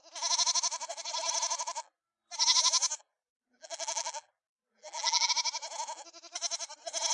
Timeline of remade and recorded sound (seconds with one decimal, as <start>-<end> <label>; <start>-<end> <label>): 0.0-3.1 recorded; 3.1-5.3 remade; 5.3-7.1 recorded